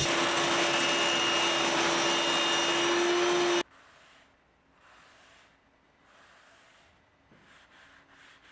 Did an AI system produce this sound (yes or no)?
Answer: no